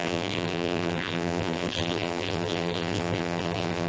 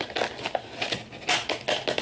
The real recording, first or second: second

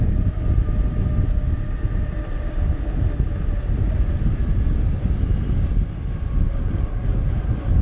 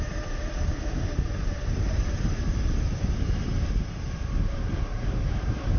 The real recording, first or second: first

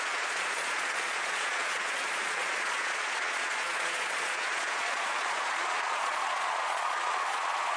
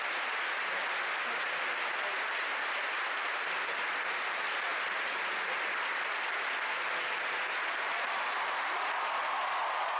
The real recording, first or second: second